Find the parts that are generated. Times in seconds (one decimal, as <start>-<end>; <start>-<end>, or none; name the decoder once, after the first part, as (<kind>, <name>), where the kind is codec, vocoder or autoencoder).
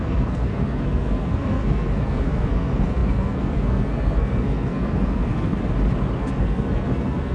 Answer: 0.0-5.6 (codec, SNAC); 6.2-7.3